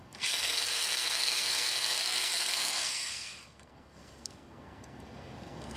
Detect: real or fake fake